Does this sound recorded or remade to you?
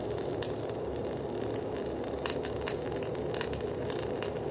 recorded